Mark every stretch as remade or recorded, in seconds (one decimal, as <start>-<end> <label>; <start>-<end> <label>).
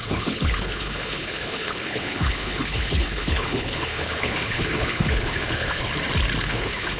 0.0-5.9 remade; 5.9-6.4 recorded; 6.4-7.0 remade